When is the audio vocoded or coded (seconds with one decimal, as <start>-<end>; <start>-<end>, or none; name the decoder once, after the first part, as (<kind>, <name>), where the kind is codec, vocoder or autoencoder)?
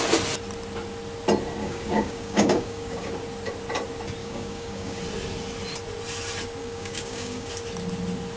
1.6-3.1 (codec, DAC); 4.2-5.0; 6.6-7.5